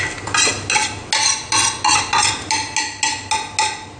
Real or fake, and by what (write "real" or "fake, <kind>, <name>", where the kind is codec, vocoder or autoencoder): real